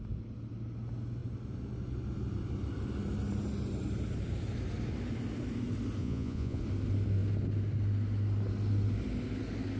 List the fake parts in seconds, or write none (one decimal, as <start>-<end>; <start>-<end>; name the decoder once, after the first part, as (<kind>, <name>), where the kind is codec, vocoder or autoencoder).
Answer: 6.0-6.6 (vocoder, Vocos)